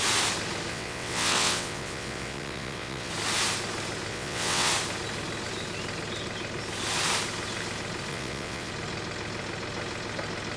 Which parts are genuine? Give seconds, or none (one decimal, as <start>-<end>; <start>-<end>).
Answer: 0.0-0.7; 3.1-4.1; 4.7-8.1; 8.7-10.6